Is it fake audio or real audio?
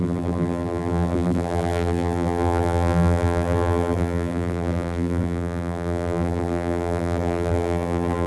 fake